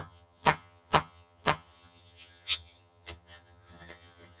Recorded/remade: remade